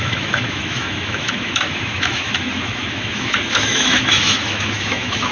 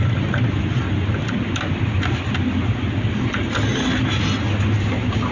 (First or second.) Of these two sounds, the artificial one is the first